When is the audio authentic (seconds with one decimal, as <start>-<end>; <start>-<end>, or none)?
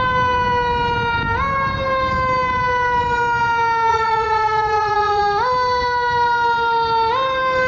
0.0-3.9; 5.2-7.7